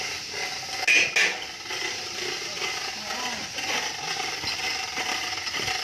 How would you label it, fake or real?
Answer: real